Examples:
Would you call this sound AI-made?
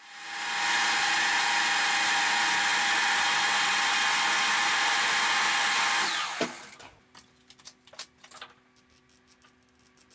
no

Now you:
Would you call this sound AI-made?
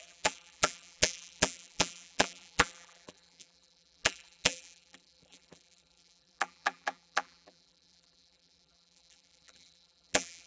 yes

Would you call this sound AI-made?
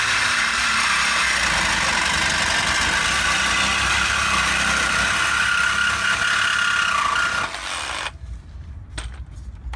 no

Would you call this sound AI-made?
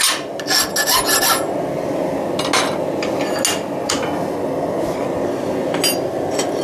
no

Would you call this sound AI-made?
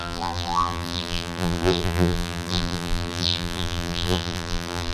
yes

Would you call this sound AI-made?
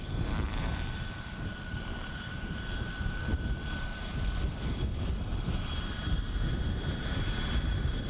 yes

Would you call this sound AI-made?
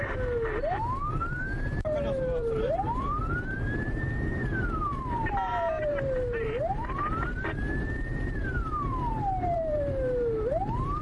yes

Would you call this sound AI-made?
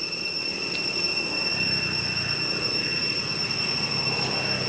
no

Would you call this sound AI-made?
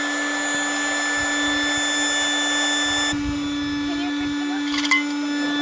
no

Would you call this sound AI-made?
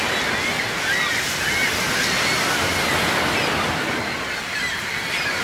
no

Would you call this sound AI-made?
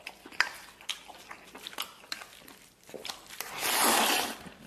no